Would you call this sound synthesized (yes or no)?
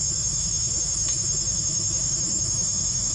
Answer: yes